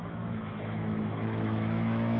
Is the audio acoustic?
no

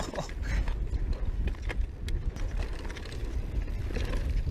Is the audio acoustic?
yes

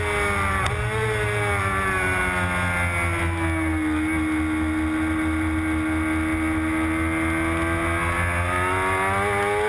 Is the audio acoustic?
yes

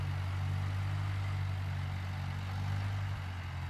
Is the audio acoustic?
yes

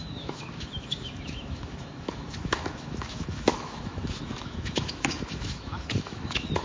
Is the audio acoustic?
no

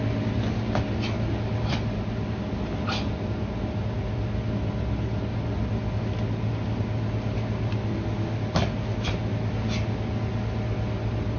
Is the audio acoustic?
yes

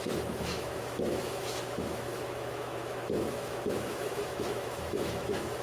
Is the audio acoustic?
no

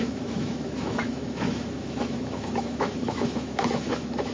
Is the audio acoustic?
no